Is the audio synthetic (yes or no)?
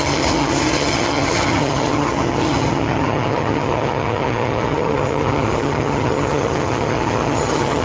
yes